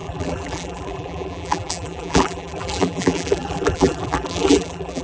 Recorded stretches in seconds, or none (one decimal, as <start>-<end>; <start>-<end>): none